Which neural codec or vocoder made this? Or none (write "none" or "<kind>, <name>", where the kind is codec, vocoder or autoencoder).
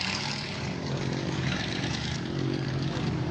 codec, DAC